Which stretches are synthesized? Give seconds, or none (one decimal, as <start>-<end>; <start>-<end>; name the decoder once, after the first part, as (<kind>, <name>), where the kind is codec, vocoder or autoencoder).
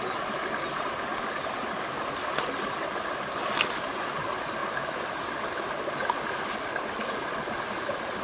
none